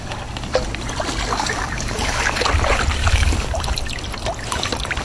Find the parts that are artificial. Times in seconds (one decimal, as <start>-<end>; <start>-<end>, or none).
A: 1.3-2.5; 3.0-3.7